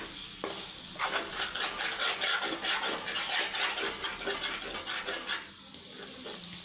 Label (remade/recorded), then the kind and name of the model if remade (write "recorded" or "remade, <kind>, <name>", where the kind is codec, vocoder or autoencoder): recorded